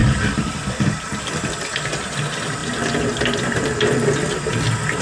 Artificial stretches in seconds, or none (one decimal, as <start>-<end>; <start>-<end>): 0.0-1.4; 2.6-4.5